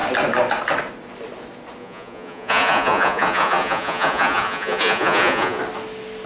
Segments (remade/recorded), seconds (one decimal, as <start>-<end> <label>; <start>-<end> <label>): 0.0-1.8 recorded; 1.8-5.6 remade; 5.6-6.3 recorded